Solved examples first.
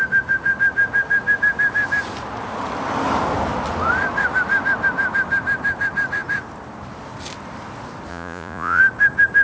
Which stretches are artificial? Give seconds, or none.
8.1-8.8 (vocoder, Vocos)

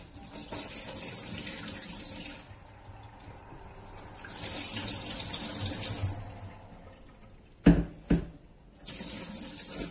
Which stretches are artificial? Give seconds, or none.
none